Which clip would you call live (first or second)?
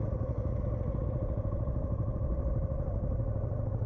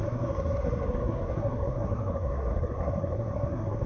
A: first